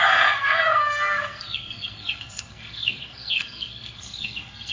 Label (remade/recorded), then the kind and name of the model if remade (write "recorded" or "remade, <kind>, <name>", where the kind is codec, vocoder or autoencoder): remade, codec, SNAC